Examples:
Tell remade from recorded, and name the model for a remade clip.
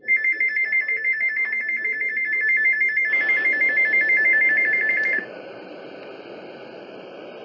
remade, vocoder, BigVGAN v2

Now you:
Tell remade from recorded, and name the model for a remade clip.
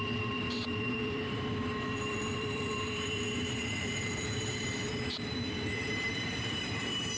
remade, vocoder, BigVGAN v2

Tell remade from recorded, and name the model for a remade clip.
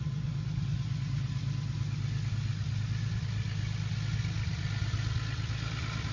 recorded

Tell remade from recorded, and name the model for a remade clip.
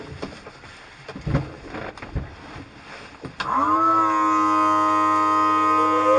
recorded